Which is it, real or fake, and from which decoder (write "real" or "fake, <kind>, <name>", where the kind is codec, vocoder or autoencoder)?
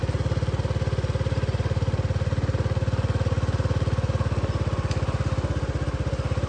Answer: real